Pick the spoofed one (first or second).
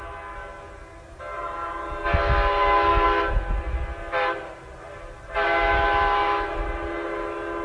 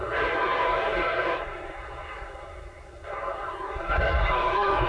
second